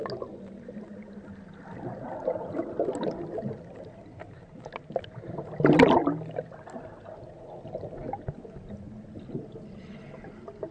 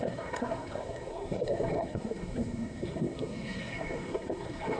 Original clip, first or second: first